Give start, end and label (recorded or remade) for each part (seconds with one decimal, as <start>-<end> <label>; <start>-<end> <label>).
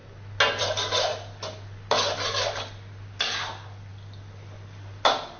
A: 0.0-5.4 recorded